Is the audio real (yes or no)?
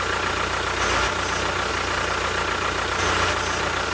yes